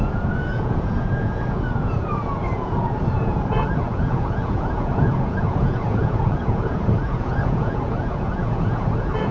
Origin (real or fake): fake